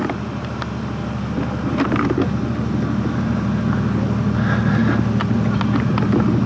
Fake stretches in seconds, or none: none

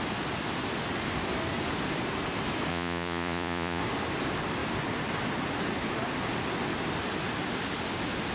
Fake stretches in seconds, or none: 2.7-3.8 (vocoder, Vocos)

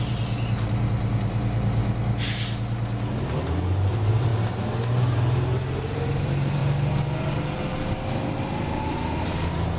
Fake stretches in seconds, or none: 0.0-1.8 (vocoder, BigVGAN v2); 3.9-4.3; 4.9-6.6

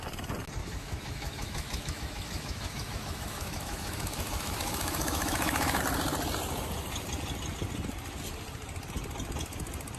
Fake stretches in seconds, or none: 0.6-5.8 (autoencoder, DAC-VAE)

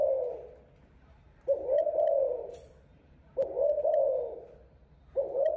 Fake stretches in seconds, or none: 1.0-3.3 (vocoder, BigVGAN v2); 4.8-5.6

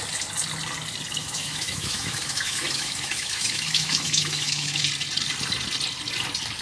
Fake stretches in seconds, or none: 1.2-4.8 (autoencoder, DAC-VAE)